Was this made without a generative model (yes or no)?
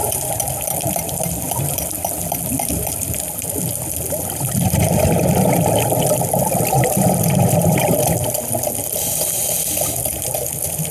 yes